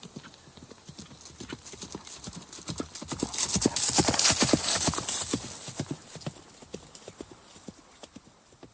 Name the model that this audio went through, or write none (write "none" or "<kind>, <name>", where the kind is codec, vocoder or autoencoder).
none